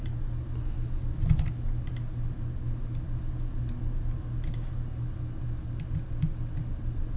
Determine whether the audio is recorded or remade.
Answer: recorded